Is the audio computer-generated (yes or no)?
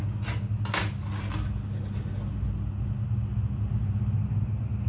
no